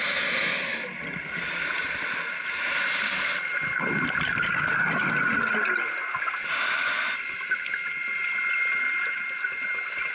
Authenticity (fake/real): real